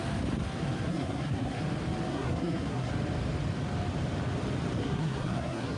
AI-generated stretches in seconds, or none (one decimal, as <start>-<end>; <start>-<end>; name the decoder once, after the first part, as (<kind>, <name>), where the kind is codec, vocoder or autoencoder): 0.9-1.6 (codec, SNAC); 2.1-2.9; 4.8-5.8